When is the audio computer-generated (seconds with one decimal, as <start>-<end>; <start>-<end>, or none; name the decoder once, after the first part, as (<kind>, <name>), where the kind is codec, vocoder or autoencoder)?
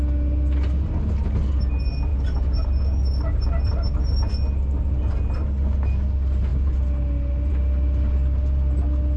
none